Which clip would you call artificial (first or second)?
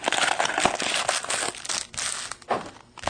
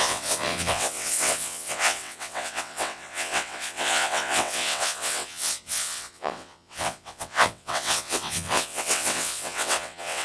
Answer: second